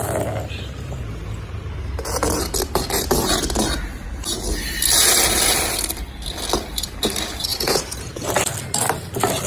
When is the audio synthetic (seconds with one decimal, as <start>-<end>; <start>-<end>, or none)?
7.5-8.2